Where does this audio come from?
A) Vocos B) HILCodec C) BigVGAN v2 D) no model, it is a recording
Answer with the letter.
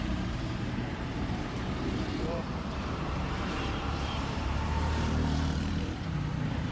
C